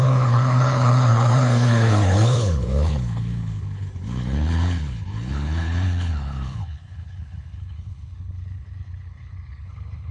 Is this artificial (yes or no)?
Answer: yes